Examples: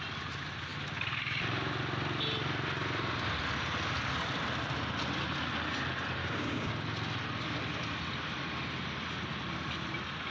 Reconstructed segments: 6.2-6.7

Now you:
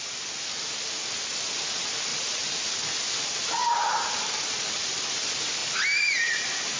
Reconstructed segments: 2.1-2.6; 3.6-4.8; 5.6-6.8

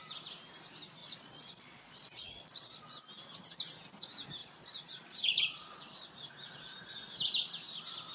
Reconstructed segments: 1.0-3.0; 4.4-6.3